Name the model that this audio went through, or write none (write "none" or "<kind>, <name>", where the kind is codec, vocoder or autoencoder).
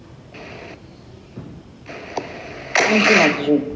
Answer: none